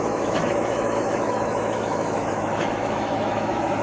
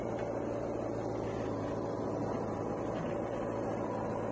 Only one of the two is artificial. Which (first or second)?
first